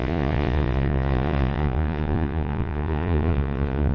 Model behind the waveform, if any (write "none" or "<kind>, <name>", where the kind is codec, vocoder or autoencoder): vocoder, Vocos